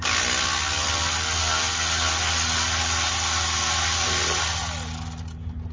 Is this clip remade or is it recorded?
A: recorded